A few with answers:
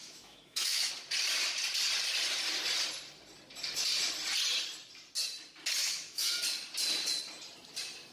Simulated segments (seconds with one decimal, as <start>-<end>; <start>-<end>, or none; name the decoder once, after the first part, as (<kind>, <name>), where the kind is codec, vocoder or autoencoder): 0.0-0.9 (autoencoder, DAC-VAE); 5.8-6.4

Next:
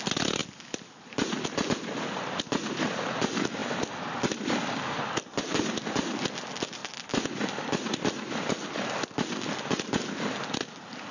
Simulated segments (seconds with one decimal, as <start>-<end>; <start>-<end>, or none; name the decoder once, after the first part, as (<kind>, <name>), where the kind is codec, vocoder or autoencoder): none

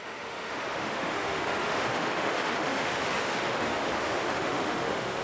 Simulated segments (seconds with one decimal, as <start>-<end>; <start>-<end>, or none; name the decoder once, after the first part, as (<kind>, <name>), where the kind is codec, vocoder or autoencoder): 0.0-5.2 (autoencoder, DAC-VAE)

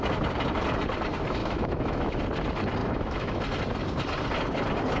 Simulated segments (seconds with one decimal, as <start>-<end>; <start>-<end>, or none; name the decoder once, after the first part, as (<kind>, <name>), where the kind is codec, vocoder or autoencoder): 1.4-2.2 (autoencoder, DAC-VAE); 2.8-3.4